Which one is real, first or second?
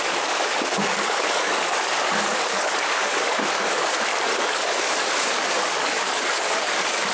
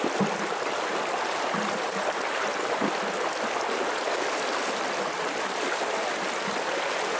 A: second